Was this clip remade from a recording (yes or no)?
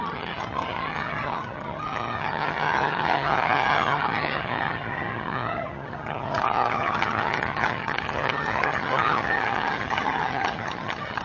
yes